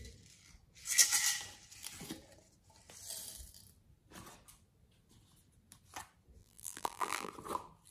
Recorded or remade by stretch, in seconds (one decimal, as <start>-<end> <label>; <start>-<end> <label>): 0.0-6.4 recorded; 6.4-7.3 remade; 7.3-7.9 recorded